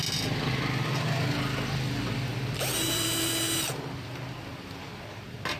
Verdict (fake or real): real